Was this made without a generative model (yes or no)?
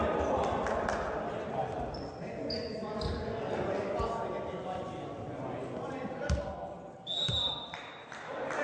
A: yes